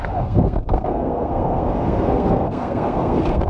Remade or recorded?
remade